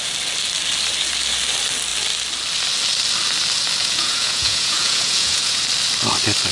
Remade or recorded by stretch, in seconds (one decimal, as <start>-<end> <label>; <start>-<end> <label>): 0.0-3.8 recorded; 3.8-5.6 remade; 5.6-6.5 recorded